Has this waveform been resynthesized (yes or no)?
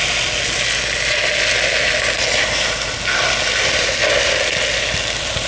no